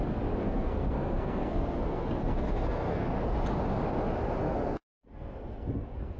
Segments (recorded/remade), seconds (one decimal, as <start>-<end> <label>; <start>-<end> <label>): 0.0-0.4 recorded; 0.4-3.1 remade; 3.1-4.4 recorded; 4.4-6.2 remade